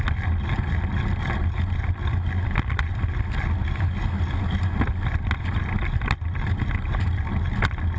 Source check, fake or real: real